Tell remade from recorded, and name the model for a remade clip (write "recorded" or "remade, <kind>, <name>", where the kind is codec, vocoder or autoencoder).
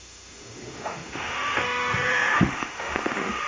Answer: remade, autoencoder, DAC-VAE